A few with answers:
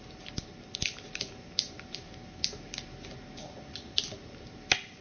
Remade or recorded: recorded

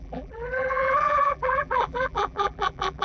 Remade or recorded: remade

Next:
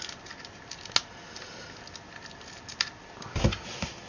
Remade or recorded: recorded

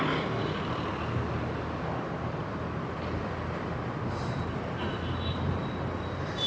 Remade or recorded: recorded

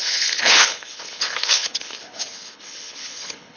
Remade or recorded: remade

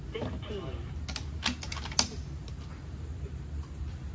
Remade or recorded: recorded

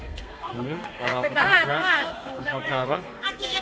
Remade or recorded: remade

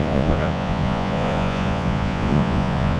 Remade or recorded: remade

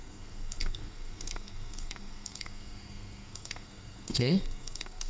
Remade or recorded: remade